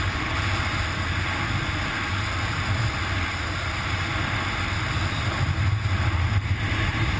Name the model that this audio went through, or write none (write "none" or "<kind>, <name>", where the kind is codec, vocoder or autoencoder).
none